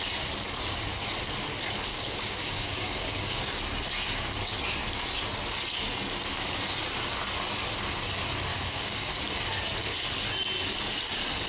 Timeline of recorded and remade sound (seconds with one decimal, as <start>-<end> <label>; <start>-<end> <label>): 0.0-1.9 recorded; 1.9-3.6 remade; 3.6-8.5 recorded; 8.5-9.1 remade; 9.1-11.5 recorded